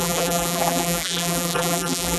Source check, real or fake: fake